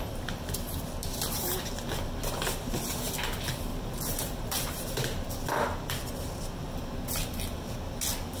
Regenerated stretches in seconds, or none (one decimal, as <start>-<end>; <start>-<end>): 1.0-1.7; 3.7-5.3